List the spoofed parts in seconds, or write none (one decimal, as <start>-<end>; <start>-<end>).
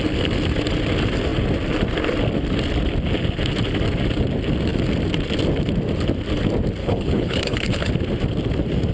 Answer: 6.8-7.9